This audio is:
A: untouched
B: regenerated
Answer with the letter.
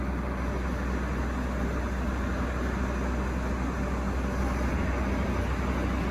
A